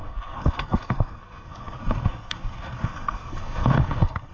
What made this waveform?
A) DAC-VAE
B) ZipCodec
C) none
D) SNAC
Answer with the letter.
D